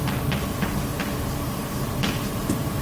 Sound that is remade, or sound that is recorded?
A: recorded